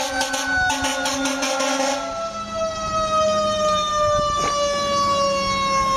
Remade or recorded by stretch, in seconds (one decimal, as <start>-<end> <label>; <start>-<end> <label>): 0.0-6.0 recorded